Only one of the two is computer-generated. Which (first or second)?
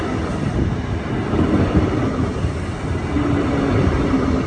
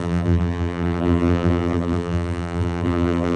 second